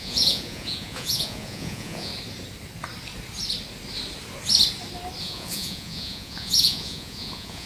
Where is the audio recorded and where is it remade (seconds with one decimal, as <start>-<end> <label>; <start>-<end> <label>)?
0.0-2.1 remade; 2.1-5.2 recorded; 5.2-7.7 remade